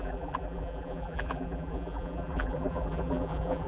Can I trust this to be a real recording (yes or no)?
no